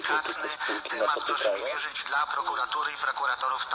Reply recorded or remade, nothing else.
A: remade